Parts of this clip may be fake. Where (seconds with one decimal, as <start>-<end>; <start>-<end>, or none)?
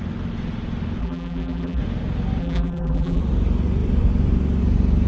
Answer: 1.0-1.8; 2.4-3.2